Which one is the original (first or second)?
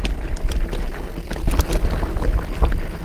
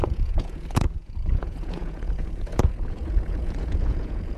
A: first